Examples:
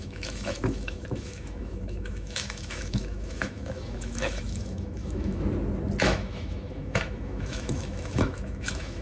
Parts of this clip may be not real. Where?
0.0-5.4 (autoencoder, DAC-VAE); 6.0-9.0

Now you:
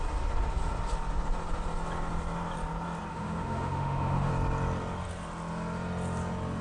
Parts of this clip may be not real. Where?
3.1-4.3 (autoencoder, DAC-VAE)

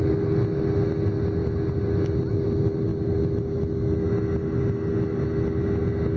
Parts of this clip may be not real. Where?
2.9-4.2 (autoencoder, DAC-VAE)

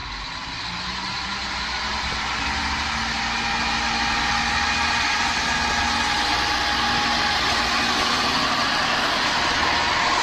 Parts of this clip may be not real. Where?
none

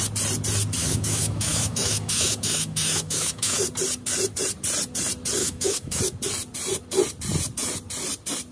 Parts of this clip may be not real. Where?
0.8-3.6 (autoencoder, DAC-VAE); 5.4-6.0

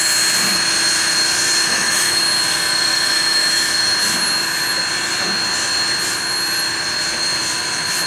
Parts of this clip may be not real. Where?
1.6-2.2 (autoencoder, DAC-VAE); 2.9-3.7

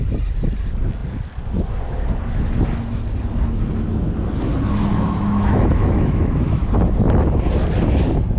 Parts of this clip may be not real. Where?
4.9-6.6 (autoencoder, DAC-VAE)